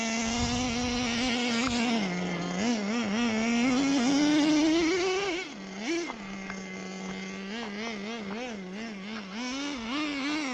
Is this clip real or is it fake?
real